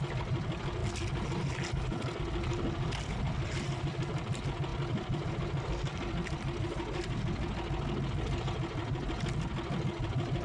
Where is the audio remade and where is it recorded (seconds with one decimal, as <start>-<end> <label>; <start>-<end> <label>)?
0.0-10.4 recorded